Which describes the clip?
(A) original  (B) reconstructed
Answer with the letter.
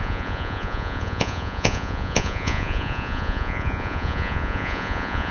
B